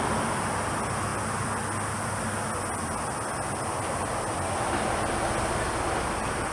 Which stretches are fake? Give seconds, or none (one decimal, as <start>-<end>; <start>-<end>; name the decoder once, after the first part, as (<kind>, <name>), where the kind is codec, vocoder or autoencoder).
none